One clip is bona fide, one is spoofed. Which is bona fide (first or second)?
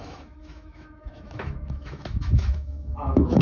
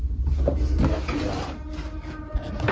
second